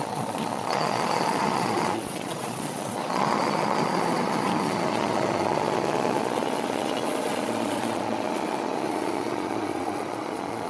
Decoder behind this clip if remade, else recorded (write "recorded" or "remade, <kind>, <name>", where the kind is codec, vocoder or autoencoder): remade, vocoder, Vocos